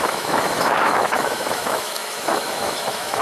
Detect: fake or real fake